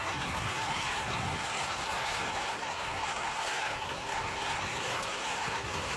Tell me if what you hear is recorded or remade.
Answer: remade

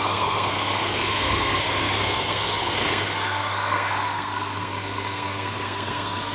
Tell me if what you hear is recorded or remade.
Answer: remade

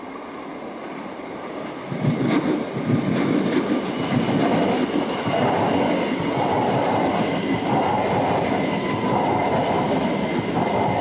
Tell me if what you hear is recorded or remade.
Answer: recorded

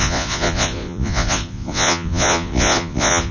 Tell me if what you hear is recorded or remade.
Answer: remade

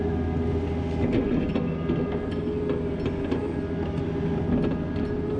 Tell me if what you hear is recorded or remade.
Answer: recorded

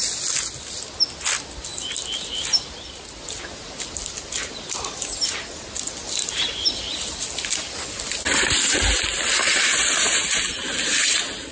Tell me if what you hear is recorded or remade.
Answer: recorded